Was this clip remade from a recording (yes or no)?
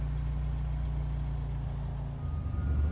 no